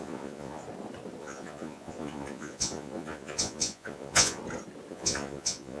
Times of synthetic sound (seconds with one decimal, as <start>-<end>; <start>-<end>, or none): 0.0-0.6; 1.2-4.4; 4.9-5.8